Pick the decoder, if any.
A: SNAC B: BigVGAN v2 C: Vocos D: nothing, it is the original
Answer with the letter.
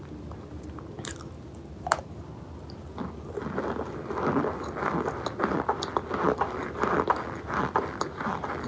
D